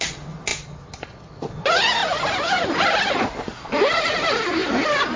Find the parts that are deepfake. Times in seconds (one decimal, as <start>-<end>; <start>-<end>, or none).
none